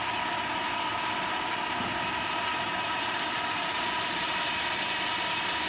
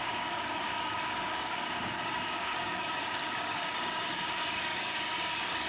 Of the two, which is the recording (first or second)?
first